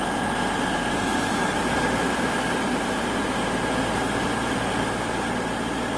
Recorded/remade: recorded